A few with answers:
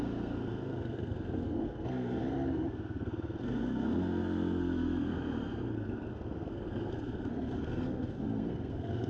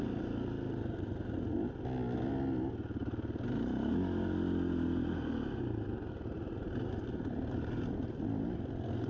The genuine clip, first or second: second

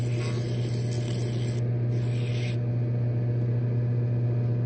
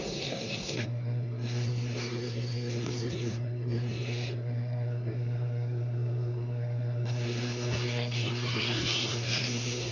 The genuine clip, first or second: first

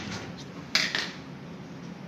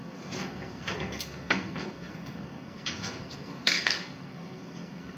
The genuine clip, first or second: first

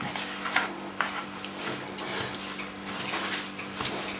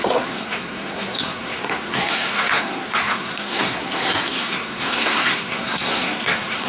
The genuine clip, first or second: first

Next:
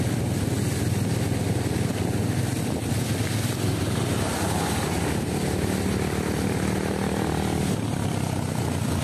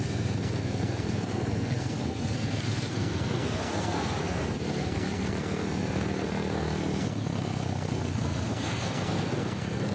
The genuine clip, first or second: first